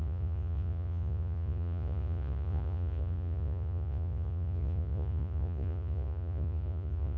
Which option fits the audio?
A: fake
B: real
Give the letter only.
A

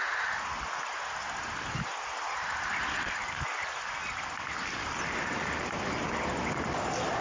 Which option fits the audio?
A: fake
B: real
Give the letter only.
B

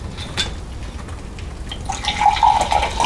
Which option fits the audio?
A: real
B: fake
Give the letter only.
A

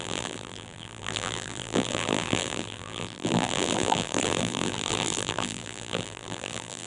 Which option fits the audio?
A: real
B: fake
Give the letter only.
B